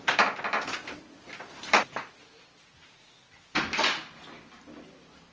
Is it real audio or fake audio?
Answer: real